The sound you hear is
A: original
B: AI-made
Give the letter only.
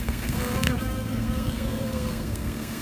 B